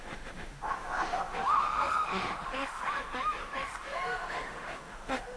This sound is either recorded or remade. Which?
remade